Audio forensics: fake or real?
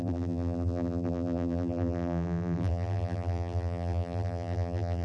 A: fake